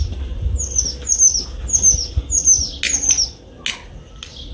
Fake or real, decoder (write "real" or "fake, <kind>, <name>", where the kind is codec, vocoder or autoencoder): real